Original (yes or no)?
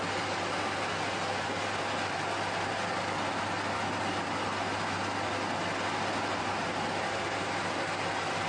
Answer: yes